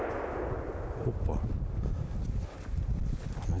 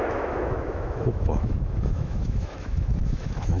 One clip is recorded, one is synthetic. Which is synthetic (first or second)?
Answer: second